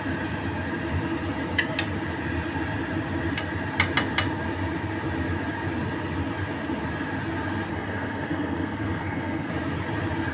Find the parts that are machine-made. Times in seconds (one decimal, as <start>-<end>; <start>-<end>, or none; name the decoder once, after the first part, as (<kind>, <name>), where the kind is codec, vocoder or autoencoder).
7.7-9.5 (codec, SNAC)